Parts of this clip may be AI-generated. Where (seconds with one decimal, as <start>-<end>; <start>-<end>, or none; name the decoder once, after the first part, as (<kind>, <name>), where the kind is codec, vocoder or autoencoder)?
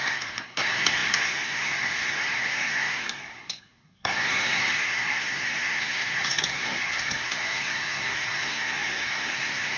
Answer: 0.0-9.8 (codec, SNAC)